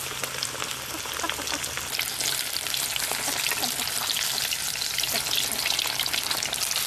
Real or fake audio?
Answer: real